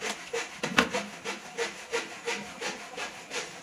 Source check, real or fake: real